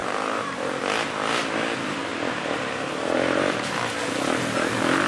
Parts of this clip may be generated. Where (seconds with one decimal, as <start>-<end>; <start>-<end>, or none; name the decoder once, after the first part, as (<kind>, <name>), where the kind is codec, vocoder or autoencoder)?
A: 0.0-0.8 (vocoder, BigVGAN v2); 2.1-3.7

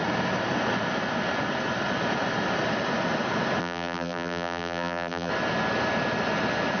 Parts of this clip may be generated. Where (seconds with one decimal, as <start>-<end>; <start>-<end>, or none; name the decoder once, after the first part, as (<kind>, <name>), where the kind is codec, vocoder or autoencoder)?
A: 3.6-5.3 (vocoder, BigVGAN v2)

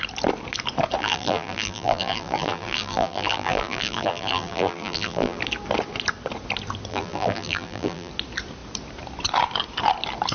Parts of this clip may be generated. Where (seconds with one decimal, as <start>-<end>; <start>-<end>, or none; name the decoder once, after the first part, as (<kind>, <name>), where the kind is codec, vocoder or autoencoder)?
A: 1.0-5.4 (vocoder, BigVGAN v2); 6.9-8.1

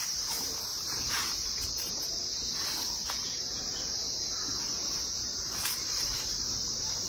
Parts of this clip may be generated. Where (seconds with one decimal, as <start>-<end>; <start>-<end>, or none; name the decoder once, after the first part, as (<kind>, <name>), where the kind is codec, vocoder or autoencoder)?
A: 0.7-1.9 (vocoder, BigVGAN v2); 5.2-7.1

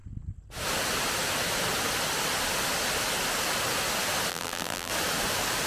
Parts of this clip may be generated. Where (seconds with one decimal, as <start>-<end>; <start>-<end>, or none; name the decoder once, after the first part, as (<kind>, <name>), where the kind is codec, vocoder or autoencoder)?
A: 4.3-4.9 (vocoder, BigVGAN v2)